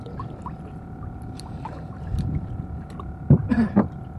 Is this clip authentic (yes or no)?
yes